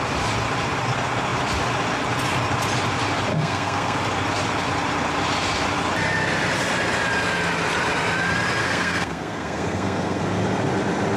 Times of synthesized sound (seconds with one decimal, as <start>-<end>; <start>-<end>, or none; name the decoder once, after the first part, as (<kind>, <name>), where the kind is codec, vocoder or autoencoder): 3.3-4.0 (codec, SNAC); 8.6-10.2